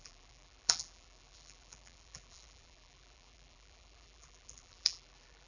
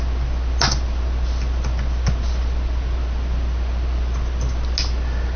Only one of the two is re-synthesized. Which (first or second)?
first